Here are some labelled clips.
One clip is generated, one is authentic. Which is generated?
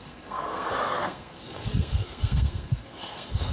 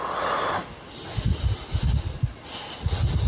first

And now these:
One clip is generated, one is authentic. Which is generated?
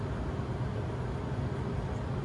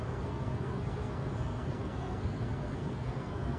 second